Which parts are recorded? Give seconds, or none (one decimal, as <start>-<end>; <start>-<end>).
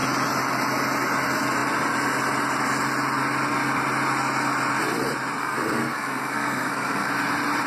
0.0-5.4; 7.1-7.7